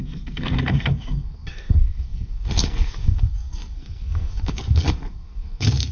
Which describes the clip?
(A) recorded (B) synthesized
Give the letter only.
B